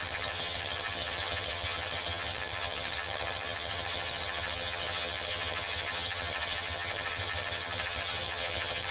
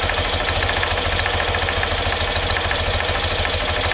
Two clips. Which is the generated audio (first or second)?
first